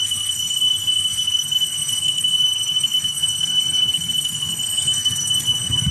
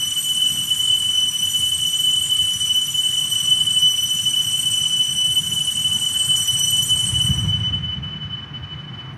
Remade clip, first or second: first